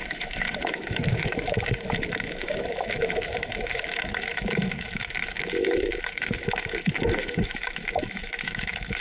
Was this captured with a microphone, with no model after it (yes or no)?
no